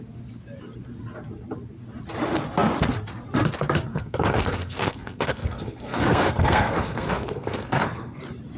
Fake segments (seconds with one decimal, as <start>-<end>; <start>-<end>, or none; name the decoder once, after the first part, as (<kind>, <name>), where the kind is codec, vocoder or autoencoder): 3.9-8.2 (codec, SNAC)